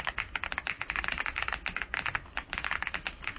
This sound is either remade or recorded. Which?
recorded